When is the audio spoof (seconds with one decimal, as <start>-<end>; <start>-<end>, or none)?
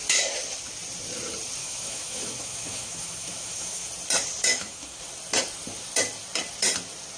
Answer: 1.6-3.9; 4.5-5.0